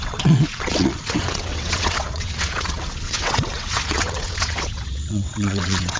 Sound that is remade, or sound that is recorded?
remade